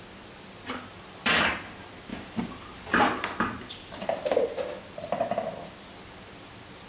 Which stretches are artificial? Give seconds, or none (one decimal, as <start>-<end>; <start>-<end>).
0.9-1.5; 2.1-3.0